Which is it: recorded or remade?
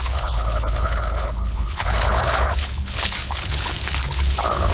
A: remade